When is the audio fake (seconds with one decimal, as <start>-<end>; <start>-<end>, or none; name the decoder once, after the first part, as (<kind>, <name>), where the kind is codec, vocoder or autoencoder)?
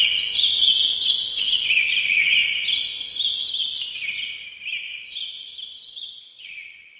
0.0-2.4 (vocoder, Vocos); 5.8-7.0